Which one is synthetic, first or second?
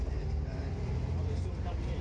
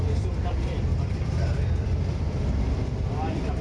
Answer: second